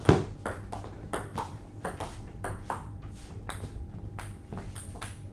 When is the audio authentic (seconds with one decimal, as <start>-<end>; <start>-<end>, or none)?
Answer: 0.0-1.3; 4.5-5.3